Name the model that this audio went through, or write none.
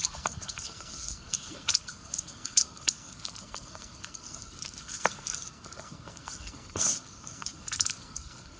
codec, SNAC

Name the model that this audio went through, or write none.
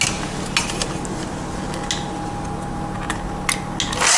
none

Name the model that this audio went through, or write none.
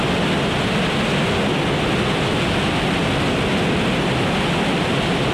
none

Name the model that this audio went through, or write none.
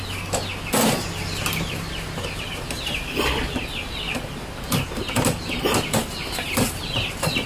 none